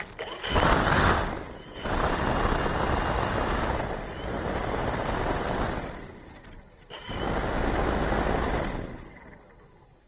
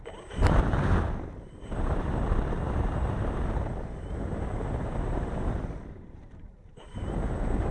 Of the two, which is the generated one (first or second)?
second